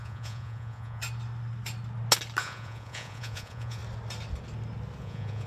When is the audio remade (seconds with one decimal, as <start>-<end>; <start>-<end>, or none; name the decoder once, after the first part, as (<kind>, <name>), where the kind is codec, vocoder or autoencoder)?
0.0-1.0 (vocoder, Vocos); 2.4-3.8; 5.0-5.5